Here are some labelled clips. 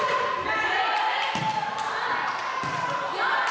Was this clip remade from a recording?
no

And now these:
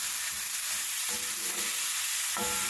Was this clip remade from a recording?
no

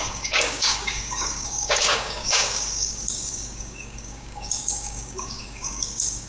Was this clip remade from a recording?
yes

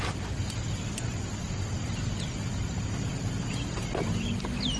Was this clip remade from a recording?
no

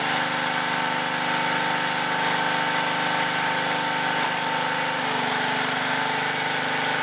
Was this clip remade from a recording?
no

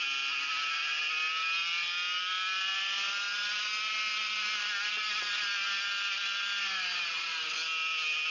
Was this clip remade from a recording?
no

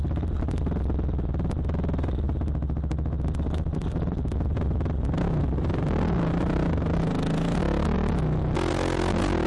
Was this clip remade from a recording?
no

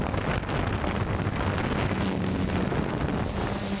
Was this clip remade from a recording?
no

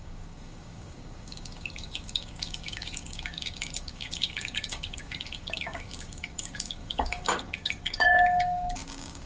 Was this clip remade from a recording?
yes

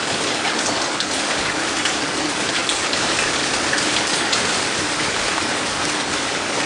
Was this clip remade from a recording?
yes